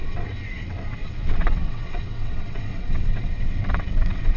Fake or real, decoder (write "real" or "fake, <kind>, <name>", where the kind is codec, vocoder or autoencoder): fake, vocoder, WaveNeXt